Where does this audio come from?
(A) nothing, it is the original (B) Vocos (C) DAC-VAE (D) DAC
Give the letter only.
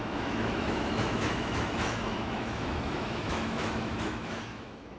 C